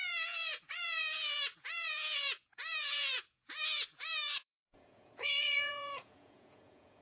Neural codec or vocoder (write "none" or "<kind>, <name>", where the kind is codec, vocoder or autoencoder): vocoder, Vocos